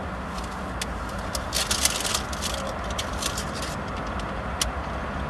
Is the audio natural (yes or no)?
yes